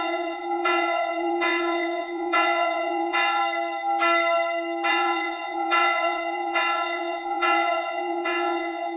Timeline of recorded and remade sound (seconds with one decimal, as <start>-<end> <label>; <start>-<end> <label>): 0.0-3.4 remade; 3.4-4.9 recorded; 4.9-9.0 remade